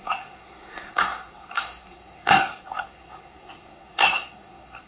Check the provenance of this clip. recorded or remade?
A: remade